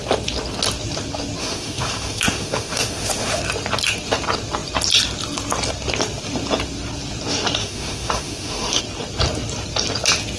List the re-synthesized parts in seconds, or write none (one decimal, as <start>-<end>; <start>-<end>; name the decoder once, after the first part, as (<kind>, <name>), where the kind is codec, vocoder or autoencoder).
1.4-3.4 (autoencoder, DAC-VAE); 7.6-8.8